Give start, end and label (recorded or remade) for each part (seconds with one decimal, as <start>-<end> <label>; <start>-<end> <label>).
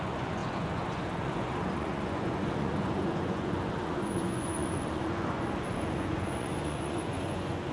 0.0-7.7 remade